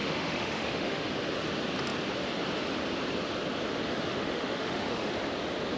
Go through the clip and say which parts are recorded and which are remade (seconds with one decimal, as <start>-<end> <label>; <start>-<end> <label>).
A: 0.0-1.1 remade; 1.1-4.1 recorded; 4.1-5.1 remade; 5.1-5.8 recorded